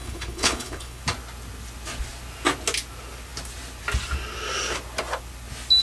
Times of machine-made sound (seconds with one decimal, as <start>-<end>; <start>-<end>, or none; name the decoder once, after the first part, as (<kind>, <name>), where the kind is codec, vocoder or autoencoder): 0.0-1.0 (codec, HILCodec)